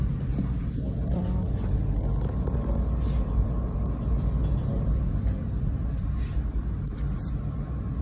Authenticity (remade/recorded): recorded